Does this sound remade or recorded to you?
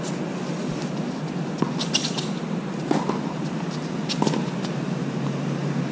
recorded